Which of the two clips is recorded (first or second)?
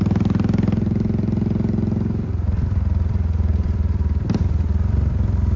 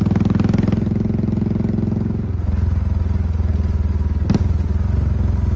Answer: second